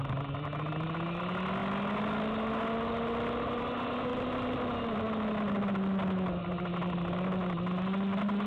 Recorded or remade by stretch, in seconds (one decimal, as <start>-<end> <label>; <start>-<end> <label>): 0.0-8.5 recorded